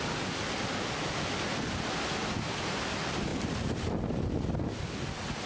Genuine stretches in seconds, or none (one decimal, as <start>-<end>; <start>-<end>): 0.0-5.5